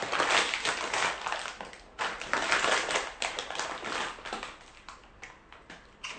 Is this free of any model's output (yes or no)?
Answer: yes